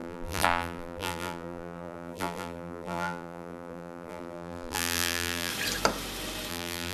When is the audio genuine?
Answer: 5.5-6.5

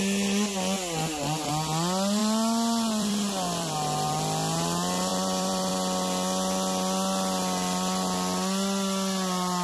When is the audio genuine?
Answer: 0.0-2.2; 4.1-5.1; 5.7-9.6

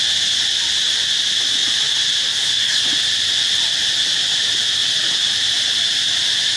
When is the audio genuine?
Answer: 0.0-1.6; 2.4-6.6

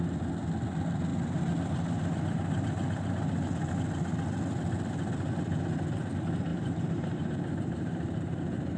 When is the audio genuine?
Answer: 0.0-6.5; 8.3-8.8

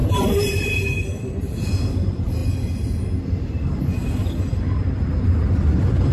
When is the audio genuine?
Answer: 2.4-3.2